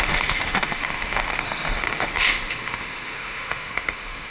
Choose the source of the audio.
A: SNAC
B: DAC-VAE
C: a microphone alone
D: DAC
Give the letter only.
B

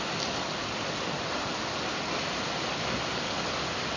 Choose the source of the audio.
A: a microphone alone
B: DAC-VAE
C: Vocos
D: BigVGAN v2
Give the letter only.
A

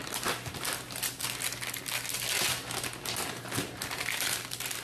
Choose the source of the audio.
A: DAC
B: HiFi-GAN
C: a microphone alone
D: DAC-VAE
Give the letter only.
C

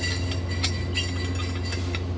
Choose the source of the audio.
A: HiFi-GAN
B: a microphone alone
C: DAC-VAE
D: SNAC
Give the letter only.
B